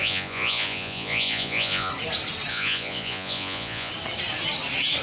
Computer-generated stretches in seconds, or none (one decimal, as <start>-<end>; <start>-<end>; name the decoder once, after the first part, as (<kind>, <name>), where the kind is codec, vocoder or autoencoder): 0.0-1.9 (vocoder, Vocos); 2.5-3.9